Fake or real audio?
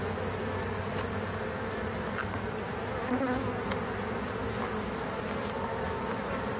real